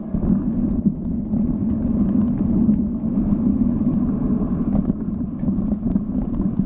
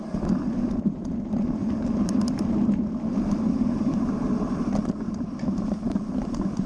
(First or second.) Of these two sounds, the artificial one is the second